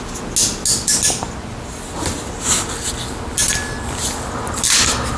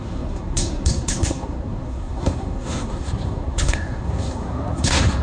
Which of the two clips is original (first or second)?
first